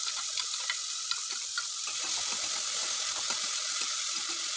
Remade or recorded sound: remade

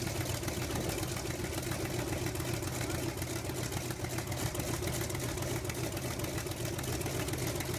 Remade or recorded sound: recorded